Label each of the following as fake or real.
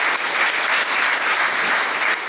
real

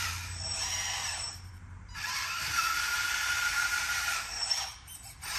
fake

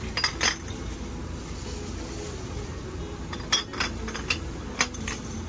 real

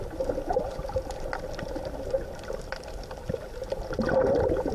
real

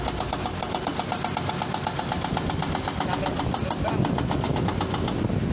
real